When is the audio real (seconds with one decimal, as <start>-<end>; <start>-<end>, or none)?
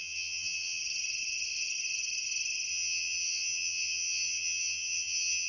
0.8-2.7